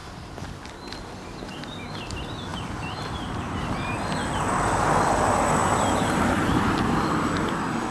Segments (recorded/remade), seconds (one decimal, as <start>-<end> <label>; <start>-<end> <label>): 0.0-2.5 recorded; 2.5-4.0 remade; 4.0-5.6 recorded; 5.6-6.8 remade; 6.8-7.9 recorded